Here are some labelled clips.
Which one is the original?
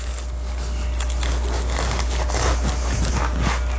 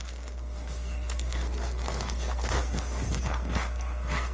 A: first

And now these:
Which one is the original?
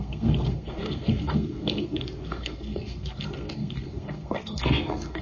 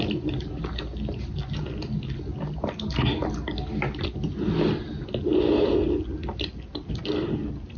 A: second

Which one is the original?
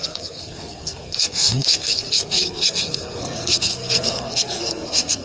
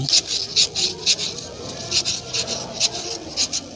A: second